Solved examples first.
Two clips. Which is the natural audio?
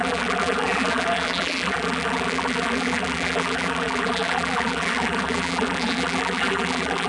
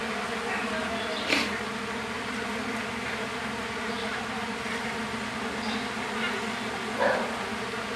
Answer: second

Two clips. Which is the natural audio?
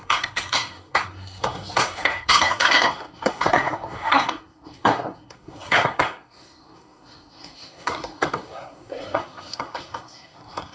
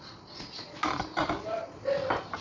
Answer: second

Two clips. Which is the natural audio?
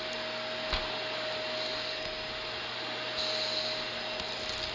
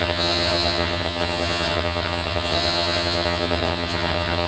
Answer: first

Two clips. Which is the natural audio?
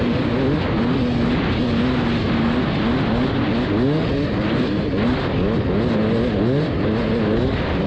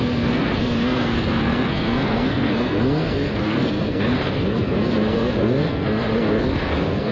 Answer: first